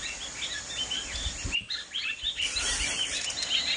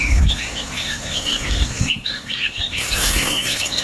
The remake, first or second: second